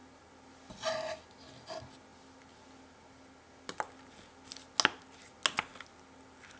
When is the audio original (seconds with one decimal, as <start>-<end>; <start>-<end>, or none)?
0.0-6.6